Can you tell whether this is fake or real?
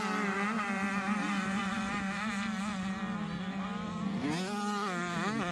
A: real